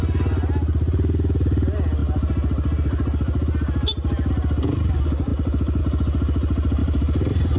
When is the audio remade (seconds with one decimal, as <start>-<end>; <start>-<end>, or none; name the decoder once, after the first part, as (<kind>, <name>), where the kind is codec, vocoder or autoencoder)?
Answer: 6.8-7.6 (vocoder, BigVGAN v2)